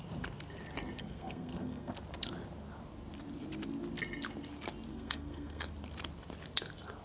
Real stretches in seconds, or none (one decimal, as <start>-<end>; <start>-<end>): 0.0-1.0; 1.9-4.9; 5.7-7.0